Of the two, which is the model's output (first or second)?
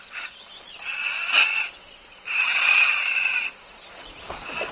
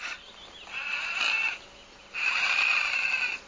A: first